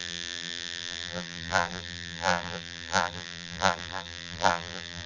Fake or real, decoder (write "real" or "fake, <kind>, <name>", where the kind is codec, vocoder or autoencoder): fake, vocoder, BigVGAN v2